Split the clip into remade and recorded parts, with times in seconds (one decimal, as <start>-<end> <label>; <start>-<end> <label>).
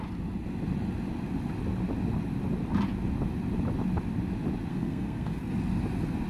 0.0-4.7 recorded; 4.7-5.4 remade; 5.4-6.3 recorded